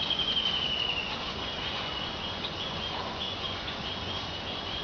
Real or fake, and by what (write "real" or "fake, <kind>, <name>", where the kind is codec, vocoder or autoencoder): fake, vocoder, Vocos